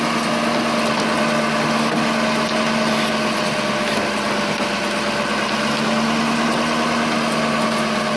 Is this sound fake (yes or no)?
no